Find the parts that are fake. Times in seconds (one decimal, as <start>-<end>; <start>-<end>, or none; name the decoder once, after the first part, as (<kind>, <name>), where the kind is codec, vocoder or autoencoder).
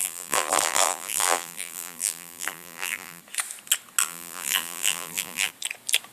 0.0-3.2 (vocoder, BigVGAN v2); 4.0-5.5